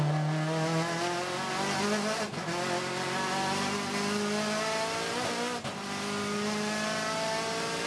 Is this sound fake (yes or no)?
no